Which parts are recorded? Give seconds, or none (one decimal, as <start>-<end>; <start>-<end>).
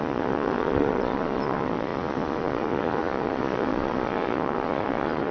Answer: none